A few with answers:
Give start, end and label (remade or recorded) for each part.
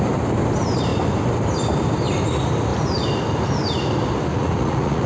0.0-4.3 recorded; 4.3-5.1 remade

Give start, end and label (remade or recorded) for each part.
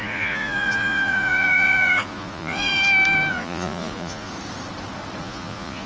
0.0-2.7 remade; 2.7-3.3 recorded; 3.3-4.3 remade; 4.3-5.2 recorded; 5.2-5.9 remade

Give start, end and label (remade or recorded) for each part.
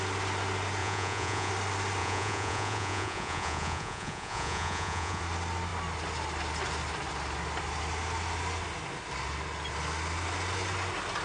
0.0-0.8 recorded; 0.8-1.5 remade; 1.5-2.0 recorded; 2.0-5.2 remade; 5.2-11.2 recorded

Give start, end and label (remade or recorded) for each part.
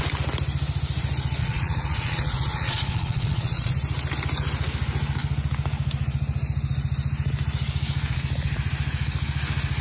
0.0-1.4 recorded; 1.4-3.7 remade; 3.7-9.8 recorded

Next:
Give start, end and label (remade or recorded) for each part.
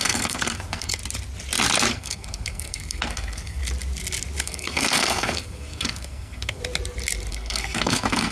0.0-1.0 remade; 1.0-1.9 recorded; 1.9-3.6 remade; 3.6-4.4 recorded; 4.4-6.6 remade; 6.6-7.3 recorded; 7.3-8.3 remade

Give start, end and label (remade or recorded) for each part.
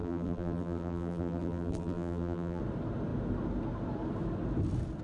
0.0-2.6 remade; 2.6-5.0 recorded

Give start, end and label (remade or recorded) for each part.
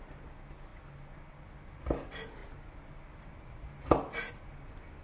0.0-5.0 recorded